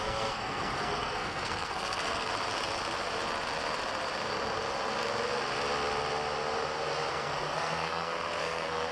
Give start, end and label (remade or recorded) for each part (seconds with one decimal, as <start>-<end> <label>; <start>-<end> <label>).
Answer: 0.0-2.3 remade; 2.3-7.1 recorded; 7.1-8.9 remade